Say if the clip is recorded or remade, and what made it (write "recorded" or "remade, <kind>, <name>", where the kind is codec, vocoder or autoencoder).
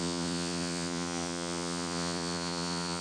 remade, vocoder, Vocos